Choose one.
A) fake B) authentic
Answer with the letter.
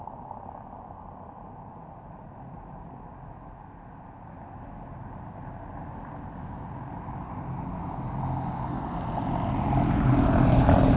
B